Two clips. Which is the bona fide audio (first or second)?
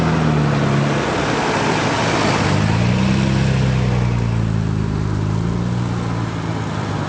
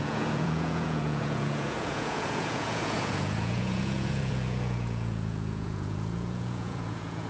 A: first